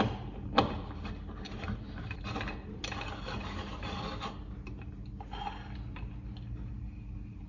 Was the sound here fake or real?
real